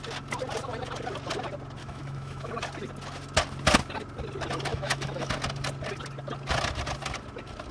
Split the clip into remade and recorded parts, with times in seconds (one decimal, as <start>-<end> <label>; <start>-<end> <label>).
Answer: 0.0-1.8 recorded; 1.8-2.5 remade; 2.5-4.7 recorded; 4.7-5.3 remade; 5.3-7.7 recorded